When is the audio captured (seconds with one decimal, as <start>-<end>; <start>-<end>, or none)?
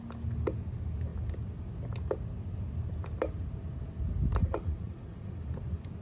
0.0-4.4; 5.4-6.0